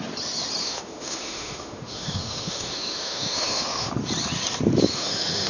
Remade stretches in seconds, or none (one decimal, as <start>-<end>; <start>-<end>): 0.6-3.9; 4.9-5.5